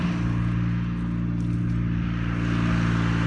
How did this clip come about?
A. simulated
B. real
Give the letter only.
B